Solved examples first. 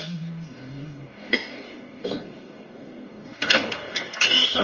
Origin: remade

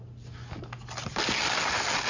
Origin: recorded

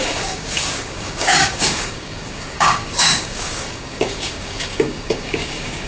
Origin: remade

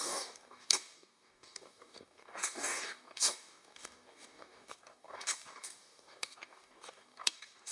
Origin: remade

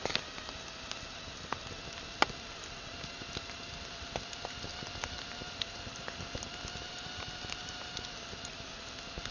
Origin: recorded